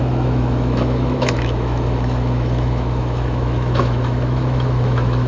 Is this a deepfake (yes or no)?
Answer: yes